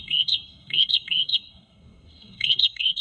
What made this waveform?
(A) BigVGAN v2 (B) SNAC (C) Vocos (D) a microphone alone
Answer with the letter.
B